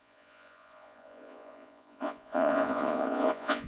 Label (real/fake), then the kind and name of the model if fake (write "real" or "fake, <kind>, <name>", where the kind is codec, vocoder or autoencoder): fake, vocoder, Vocos